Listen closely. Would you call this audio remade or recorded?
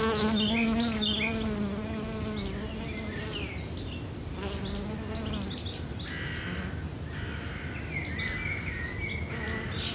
recorded